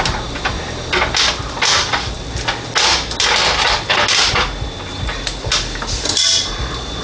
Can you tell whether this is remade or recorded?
recorded